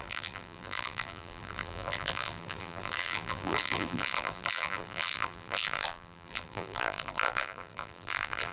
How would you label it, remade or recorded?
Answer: remade